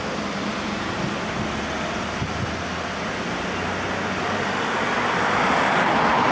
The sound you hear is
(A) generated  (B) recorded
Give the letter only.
B